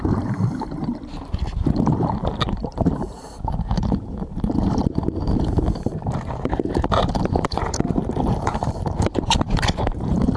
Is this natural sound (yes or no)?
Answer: no